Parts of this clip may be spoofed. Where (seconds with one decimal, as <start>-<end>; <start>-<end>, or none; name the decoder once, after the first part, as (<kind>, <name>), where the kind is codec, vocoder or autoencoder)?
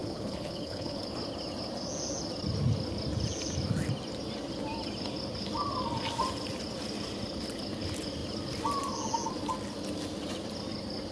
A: 0.0-1.0 (codec, HILCodec)